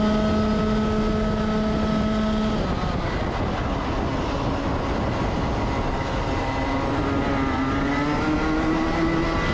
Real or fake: real